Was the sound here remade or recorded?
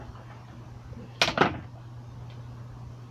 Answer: recorded